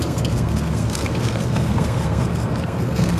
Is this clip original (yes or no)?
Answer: no